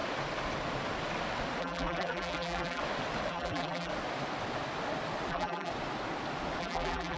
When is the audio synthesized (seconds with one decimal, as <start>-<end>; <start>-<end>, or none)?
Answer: 1.6-2.8; 3.3-3.9; 5.3-5.7; 6.6-7.2